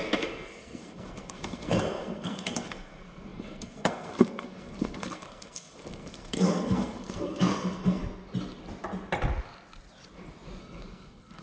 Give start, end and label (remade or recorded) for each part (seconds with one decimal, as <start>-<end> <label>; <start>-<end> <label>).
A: 0.0-8.0 remade; 8.0-10.6 recorded; 10.6-11.4 remade